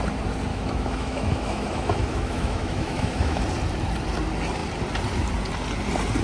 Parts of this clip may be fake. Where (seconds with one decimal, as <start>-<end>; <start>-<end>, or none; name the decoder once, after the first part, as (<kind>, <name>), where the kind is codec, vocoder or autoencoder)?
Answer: 0.5-3.4 (autoencoder, DAC-VAE)